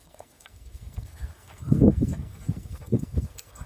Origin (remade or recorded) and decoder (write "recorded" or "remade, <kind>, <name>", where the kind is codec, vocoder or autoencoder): remade, codec, SNAC